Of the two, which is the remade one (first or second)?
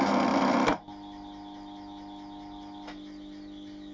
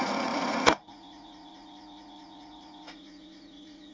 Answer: second